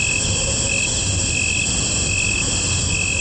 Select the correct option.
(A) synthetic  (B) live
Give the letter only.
B